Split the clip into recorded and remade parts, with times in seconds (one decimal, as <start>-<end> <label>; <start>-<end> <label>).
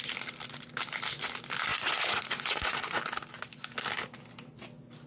0.0-1.7 recorded; 1.7-3.0 remade; 3.0-5.1 recorded